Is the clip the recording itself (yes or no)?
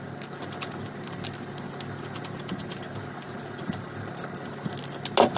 yes